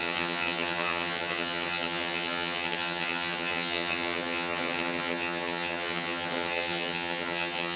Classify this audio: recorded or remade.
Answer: remade